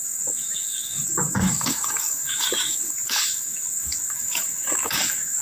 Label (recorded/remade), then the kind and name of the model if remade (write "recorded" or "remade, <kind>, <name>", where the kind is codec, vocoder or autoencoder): remade, codec, DAC